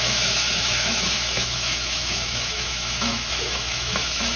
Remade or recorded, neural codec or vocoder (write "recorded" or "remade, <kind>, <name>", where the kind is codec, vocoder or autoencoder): remade, autoencoder, DAC-VAE